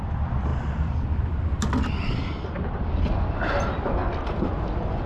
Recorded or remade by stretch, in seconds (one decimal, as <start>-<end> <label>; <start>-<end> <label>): 0.0-0.5 remade; 0.5-3.6 recorded; 3.6-4.0 remade; 4.0-5.1 recorded